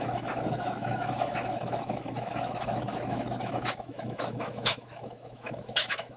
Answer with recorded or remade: remade